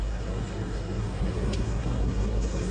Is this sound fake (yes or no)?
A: yes